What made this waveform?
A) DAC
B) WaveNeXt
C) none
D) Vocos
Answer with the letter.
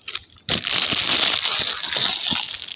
C